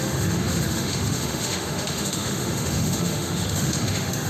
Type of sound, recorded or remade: remade